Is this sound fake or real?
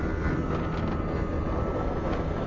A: real